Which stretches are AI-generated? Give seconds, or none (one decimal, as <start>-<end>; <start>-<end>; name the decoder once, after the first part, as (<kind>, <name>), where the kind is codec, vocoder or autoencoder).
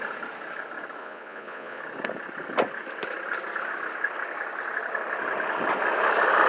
1.0-1.8 (vocoder, Vocos)